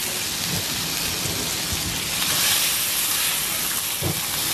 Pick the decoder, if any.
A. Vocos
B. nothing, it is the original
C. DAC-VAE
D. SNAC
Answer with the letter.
B